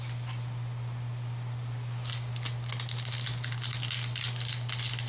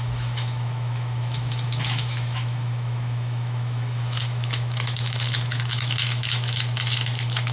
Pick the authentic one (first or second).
first